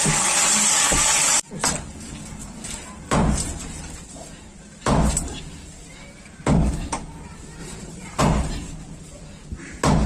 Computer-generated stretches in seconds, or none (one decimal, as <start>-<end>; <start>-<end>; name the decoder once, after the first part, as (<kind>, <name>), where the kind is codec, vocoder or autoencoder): 2.4-5.4 (vocoder, BigVGAN v2); 7.6-8.2